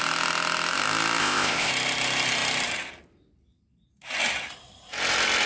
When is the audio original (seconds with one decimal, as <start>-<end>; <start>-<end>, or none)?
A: 0.0-1.2; 1.7-5.5